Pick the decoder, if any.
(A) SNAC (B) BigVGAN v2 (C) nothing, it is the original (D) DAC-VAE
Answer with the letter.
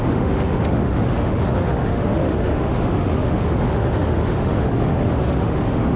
D